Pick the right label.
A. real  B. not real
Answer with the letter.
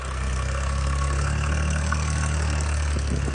B